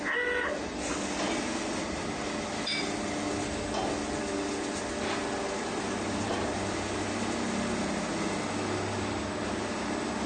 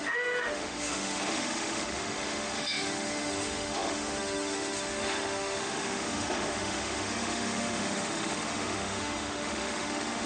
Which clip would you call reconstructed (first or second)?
second